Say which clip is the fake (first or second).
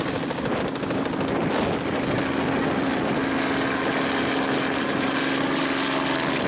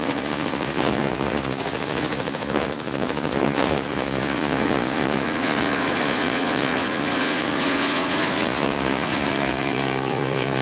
second